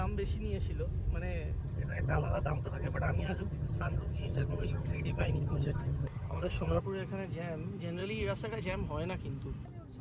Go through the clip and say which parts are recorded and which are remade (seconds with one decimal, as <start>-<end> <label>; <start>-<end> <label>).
0.0-1.6 recorded; 1.6-6.8 remade; 6.8-10.0 recorded